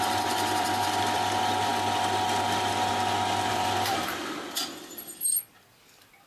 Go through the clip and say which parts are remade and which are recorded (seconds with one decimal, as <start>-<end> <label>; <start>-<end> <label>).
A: 0.0-1.7 remade; 1.7-3.5 recorded; 3.5-6.3 remade